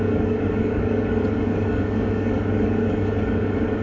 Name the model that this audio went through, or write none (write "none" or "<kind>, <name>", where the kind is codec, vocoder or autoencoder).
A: codec, DAC